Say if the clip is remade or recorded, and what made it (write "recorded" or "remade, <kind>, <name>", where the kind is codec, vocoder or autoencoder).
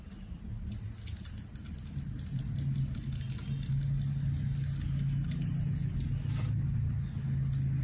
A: recorded